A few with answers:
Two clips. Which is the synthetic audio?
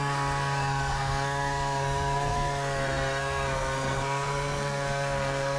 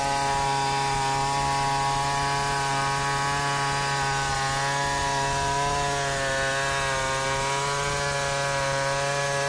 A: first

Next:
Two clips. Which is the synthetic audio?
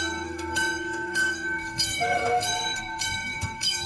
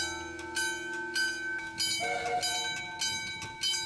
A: first